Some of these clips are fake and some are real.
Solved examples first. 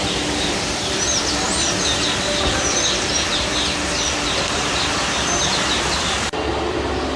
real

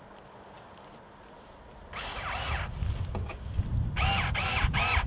fake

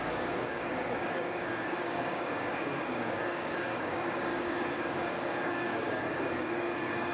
fake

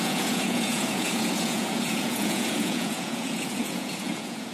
fake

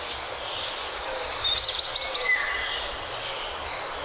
real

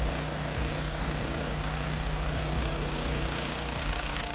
fake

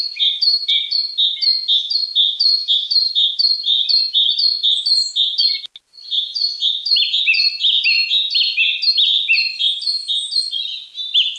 real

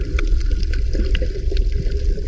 real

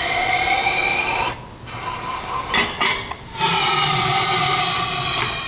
real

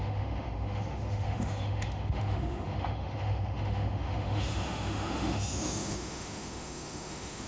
fake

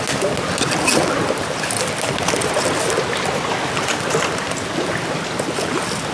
real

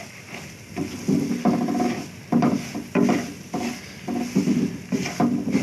real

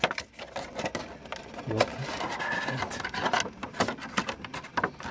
real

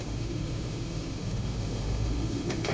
fake